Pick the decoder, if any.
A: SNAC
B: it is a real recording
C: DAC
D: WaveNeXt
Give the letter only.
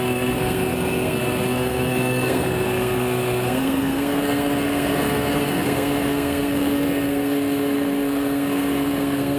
A